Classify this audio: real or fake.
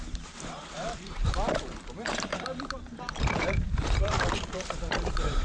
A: fake